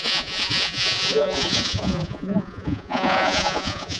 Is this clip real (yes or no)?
no